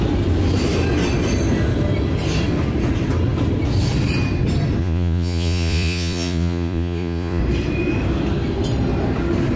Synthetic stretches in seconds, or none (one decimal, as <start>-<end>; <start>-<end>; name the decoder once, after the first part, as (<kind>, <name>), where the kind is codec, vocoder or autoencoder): 4.8-7.4 (vocoder, Vocos)

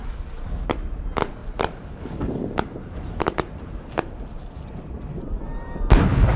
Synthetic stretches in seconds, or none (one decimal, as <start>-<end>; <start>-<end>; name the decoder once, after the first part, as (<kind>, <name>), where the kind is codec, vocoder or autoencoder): 1.4-5.0 (vocoder, BigVGAN v2)

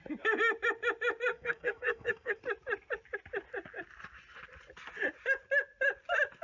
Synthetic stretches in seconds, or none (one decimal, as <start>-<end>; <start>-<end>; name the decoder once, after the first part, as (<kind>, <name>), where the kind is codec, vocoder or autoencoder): 1.3-2.4 (codec, SNAC)

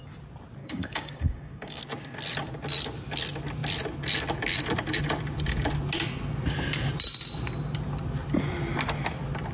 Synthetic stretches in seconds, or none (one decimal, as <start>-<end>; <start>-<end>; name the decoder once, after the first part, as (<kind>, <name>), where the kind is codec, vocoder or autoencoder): 0.6-1.8 (codec, DAC)

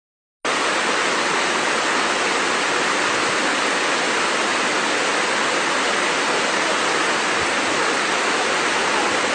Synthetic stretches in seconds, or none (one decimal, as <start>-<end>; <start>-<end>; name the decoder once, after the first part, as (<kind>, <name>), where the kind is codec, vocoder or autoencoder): none

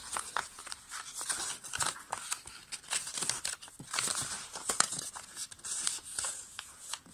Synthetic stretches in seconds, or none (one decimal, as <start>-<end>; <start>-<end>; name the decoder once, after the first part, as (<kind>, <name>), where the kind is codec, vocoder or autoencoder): 0.0-0.6 (vocoder, Vocos); 4.7-5.4; 6.3-7.1

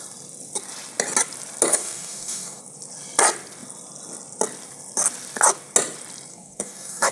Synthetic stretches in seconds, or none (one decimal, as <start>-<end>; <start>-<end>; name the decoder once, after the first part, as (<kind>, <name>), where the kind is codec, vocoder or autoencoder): 1.7-2.6 (codec, DAC); 6.3-7.1